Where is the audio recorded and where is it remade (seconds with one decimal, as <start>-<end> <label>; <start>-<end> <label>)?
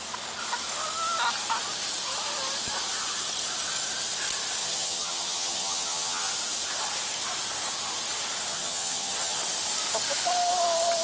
0.0-4.6 recorded; 4.6-6.3 remade; 6.3-8.5 recorded; 8.5-9.4 remade; 9.4-11.0 recorded